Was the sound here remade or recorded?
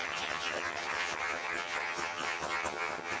remade